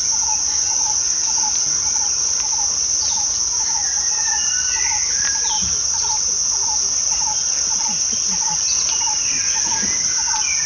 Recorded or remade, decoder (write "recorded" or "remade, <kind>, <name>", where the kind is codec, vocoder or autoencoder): recorded